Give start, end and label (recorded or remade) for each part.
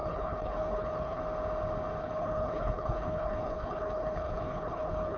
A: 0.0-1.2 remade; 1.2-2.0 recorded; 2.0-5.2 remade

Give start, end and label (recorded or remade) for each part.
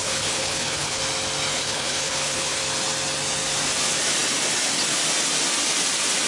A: 0.0-1.0 remade; 1.0-1.5 recorded; 1.5-2.6 remade; 2.6-6.3 recorded